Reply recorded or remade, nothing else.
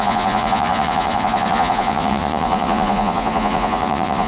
remade